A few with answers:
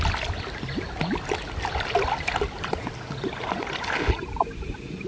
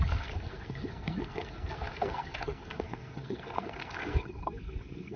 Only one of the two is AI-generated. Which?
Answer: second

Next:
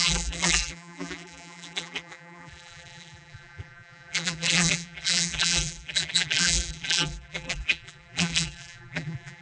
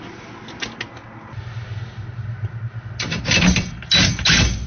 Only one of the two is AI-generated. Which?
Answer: first